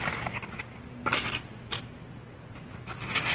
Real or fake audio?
real